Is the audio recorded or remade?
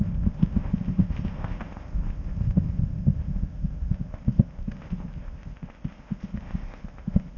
remade